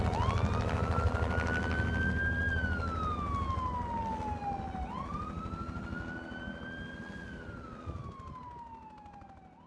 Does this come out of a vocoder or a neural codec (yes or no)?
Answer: no